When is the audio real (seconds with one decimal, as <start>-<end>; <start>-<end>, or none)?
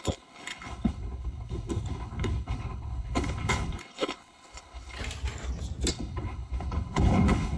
5.0-5.9